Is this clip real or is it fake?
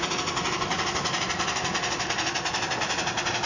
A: real